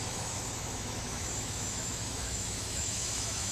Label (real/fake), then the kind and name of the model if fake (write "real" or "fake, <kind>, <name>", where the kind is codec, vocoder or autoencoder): fake, autoencoder, DAC-VAE